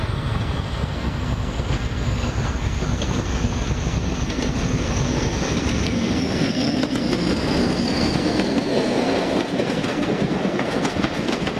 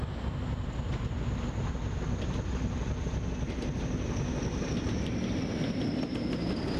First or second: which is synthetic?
first